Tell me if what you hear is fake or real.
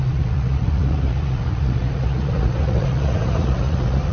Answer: fake